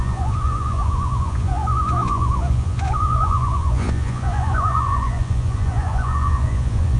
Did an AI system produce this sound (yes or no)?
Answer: yes